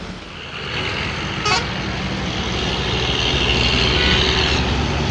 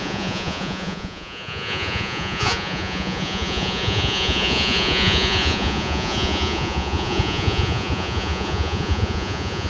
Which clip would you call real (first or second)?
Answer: first